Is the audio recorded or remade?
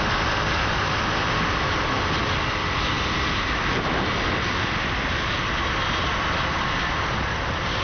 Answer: recorded